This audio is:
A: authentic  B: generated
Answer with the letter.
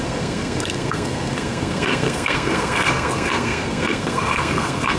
B